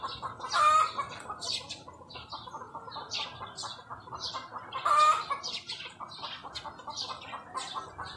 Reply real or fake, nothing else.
real